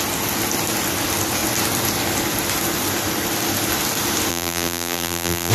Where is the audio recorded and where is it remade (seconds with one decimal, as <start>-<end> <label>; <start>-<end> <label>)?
0.0-4.3 recorded; 4.3-5.5 remade